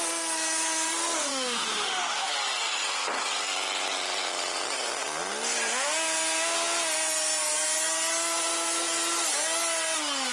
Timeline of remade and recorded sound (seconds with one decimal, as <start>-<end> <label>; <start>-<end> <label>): 0.0-1.3 recorded; 1.3-2.3 remade; 2.3-10.3 recorded